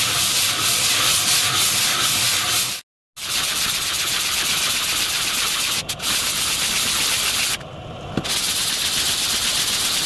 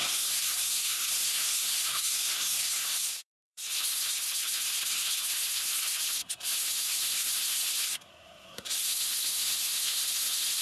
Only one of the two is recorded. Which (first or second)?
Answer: first